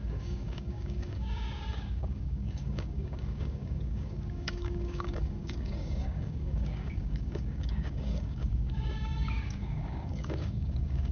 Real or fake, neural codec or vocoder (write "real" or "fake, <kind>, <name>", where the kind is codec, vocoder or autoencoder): fake, codec, DAC